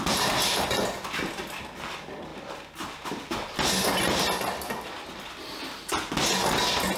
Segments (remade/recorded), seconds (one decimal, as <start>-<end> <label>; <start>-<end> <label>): 0.0-7.0 recorded